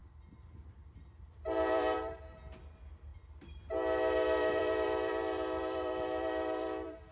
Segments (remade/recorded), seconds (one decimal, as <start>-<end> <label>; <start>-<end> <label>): 0.0-2.2 remade; 2.2-3.1 recorded; 3.1-3.6 remade; 3.6-4.4 recorded; 4.4-7.1 remade